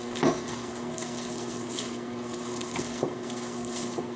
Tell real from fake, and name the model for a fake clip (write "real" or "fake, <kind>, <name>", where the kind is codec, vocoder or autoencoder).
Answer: fake, codec, SNAC